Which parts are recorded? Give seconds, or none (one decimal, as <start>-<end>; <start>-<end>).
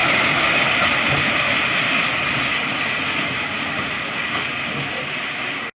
0.5-5.8